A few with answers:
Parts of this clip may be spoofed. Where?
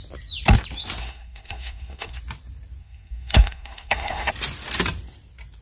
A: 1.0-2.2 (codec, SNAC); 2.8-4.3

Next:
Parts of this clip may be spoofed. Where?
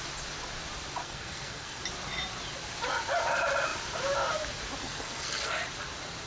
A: 1.0-1.8 (codec, SNAC); 4.8-5.6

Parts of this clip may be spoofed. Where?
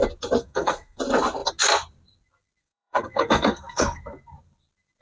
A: 0.4-1.0 (codec, SNAC); 2.6-4.0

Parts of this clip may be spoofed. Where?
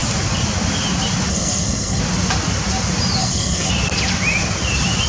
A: 1.3-2.0 (codec, SNAC); 3.2-3.7